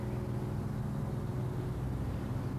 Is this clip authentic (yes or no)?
yes